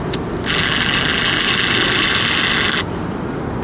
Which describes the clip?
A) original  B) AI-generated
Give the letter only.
A